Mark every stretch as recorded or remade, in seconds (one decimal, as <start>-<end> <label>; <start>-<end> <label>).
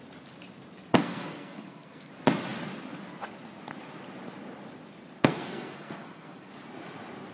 0.0-0.9 recorded; 0.9-2.1 remade; 2.1-5.2 recorded; 5.2-6.5 remade; 6.5-7.3 recorded